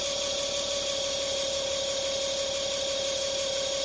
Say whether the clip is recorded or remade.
recorded